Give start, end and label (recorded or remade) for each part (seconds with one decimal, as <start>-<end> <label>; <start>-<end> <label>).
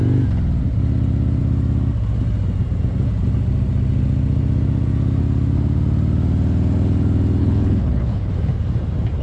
0.0-7.4 recorded; 7.4-8.3 remade; 8.3-9.2 recorded